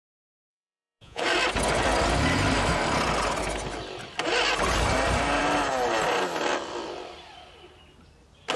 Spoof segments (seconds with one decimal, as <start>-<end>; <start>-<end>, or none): 0.5-1.2